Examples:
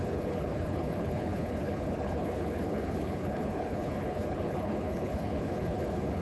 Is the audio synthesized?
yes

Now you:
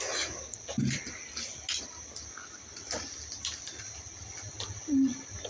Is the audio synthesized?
no